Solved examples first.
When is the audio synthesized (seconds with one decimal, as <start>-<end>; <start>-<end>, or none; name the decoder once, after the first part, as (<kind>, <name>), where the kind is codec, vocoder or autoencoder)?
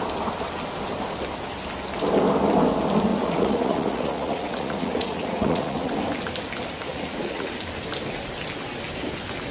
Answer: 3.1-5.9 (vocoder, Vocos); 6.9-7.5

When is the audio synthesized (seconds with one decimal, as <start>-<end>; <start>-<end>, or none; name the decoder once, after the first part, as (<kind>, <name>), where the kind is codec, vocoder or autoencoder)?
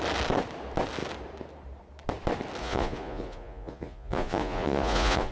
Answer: 2.6-5.3 (vocoder, Vocos)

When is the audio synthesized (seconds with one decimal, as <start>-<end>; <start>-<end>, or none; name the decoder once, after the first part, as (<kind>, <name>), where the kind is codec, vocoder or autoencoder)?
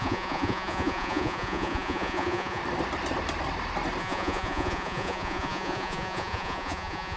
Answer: 0.0-2.6 (vocoder, Vocos); 4.0-7.2